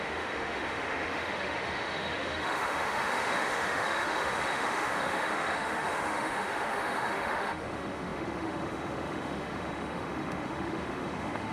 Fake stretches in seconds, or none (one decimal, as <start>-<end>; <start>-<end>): 0.0-11.5